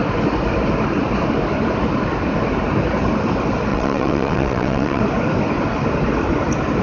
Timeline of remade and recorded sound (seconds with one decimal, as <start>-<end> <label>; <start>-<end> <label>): 0.0-3.7 recorded; 3.7-5.0 remade; 5.0-6.8 recorded